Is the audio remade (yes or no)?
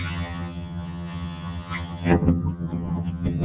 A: yes